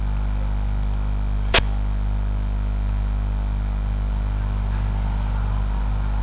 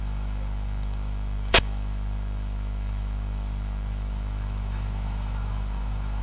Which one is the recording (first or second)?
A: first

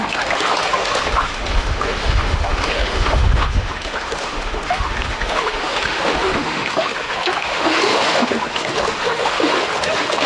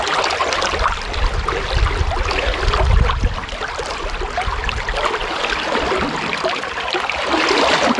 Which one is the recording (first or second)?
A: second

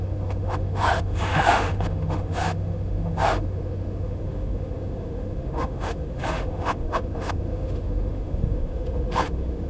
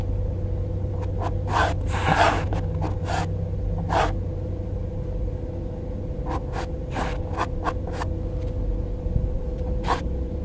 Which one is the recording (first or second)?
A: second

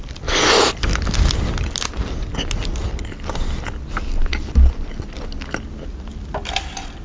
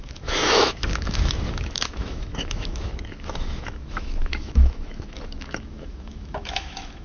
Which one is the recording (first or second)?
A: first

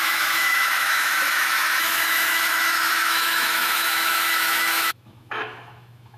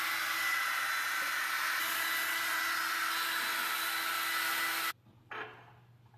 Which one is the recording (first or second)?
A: second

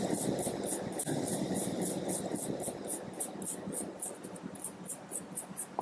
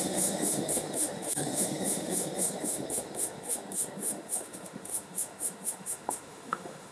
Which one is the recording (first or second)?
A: first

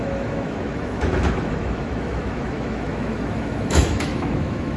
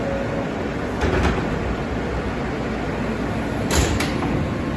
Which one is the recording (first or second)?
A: second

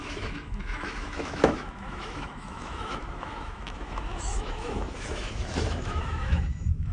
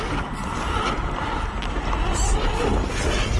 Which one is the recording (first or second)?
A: second